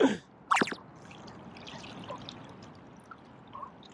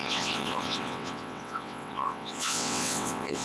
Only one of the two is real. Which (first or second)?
first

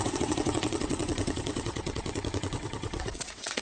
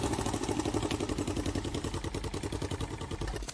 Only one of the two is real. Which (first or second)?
second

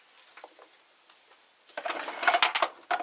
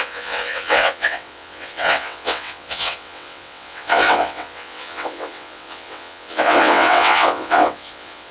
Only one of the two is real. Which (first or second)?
first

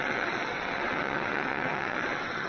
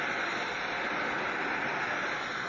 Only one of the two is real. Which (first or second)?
second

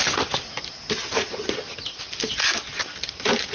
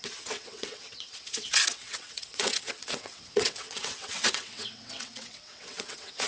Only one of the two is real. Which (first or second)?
first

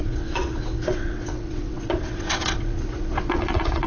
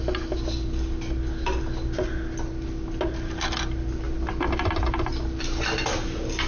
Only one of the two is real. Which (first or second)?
second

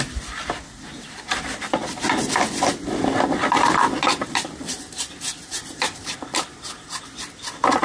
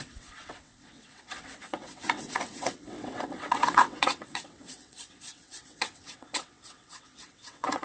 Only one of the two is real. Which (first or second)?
first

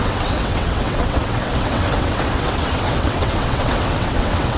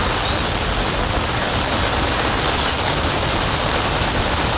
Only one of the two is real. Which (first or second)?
second